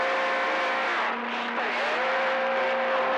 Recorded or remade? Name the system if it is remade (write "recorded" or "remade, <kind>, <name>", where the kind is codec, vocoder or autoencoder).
recorded